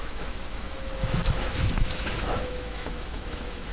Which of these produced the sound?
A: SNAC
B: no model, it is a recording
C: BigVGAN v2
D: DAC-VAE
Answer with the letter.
D